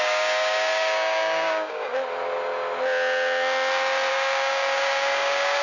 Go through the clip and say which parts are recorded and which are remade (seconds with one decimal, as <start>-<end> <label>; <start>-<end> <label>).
0.0-1.9 remade; 1.9-4.1 recorded; 4.1-5.6 remade